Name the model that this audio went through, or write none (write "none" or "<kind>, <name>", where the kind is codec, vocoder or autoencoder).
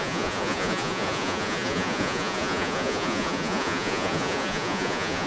vocoder, Vocos